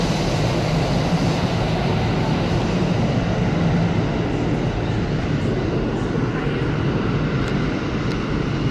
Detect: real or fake real